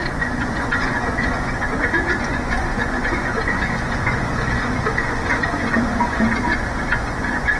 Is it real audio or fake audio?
fake